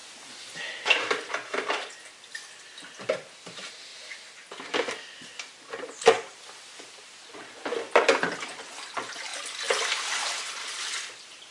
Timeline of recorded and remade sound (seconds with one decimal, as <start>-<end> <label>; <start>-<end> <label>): 0.0-3.9 remade; 3.9-5.2 recorded; 5.2-11.5 remade